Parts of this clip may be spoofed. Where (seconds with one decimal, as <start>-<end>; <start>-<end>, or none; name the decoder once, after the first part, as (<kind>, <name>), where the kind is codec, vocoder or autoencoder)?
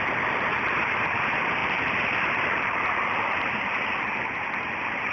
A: 1.6-3.6 (vocoder, BigVGAN v2)